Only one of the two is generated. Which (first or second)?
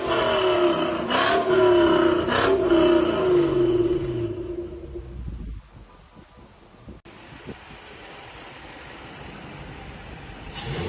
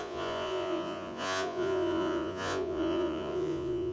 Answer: second